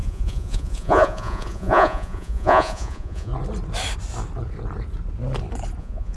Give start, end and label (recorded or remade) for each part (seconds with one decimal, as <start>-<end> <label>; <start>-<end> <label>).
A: 0.0-3.3 remade; 3.3-5.8 recorded; 5.8-6.2 remade